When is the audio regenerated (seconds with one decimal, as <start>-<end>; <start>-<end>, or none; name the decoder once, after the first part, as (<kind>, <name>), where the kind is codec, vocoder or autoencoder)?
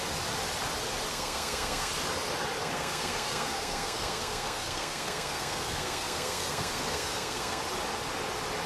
1.1-1.9 (codec, SNAC); 2.6-7.6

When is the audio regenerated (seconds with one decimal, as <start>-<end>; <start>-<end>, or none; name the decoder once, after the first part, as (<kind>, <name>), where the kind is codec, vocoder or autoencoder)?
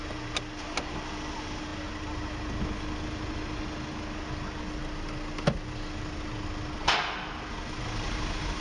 none